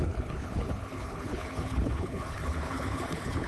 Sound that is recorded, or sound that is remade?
remade